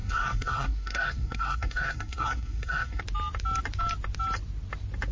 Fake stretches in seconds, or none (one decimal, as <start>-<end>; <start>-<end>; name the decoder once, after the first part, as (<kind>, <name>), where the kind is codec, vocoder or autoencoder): 0.0-3.0 (codec, SNAC)